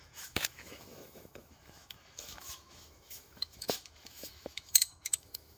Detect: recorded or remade remade